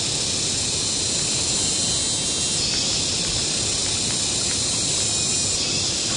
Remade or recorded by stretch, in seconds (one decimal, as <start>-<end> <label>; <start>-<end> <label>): 0.0-6.2 recorded